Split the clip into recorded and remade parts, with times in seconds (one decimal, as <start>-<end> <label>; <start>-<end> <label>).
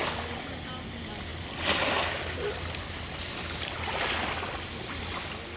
0.0-5.6 recorded